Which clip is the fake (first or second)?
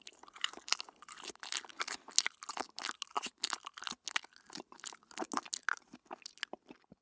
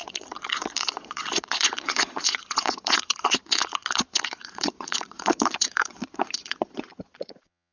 second